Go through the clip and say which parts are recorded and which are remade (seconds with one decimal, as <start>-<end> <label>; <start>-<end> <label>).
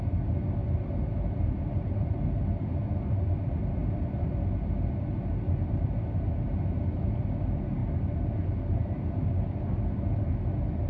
0.0-0.6 recorded; 0.6-2.2 remade; 2.2-3.8 recorded; 3.8-4.4 remade; 4.4-7.8 recorded; 7.8-8.3 remade; 8.3-10.9 recorded